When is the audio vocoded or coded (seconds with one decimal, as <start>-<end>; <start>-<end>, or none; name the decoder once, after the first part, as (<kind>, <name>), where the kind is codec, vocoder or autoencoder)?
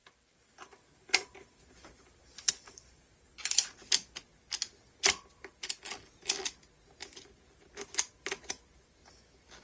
0.0-3.8 (vocoder, BigVGAN v2)